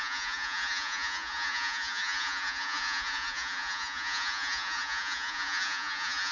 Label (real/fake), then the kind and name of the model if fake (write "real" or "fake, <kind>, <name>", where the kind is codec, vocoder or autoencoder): fake, vocoder, Vocos